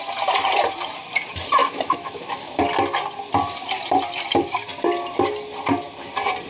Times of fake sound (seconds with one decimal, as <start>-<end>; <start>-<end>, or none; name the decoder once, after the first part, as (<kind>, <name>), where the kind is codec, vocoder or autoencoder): 1.6-2.6 (autoencoder, DAC-VAE)